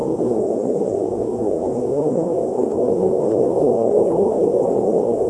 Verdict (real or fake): fake